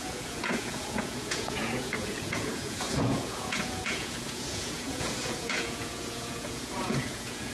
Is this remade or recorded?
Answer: remade